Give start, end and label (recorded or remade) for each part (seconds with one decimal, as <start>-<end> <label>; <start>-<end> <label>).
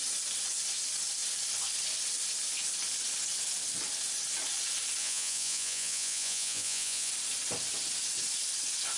0.0-5.0 recorded; 5.0-7.1 remade; 7.1-9.0 recorded